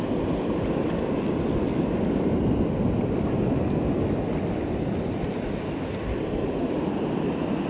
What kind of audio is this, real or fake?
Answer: real